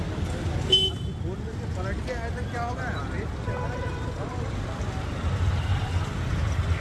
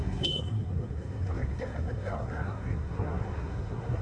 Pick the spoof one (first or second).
second